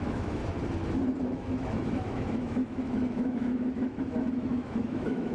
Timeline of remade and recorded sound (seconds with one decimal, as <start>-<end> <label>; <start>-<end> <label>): 0.0-0.4 remade; 0.4-1.2 recorded; 1.2-5.3 remade